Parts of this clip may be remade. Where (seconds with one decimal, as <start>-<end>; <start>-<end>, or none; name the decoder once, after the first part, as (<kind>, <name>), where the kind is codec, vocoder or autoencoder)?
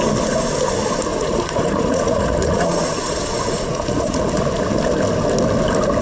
1.1-4.2 (vocoder, Vocos)